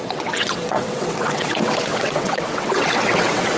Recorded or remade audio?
remade